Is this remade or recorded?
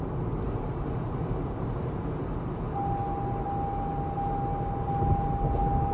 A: recorded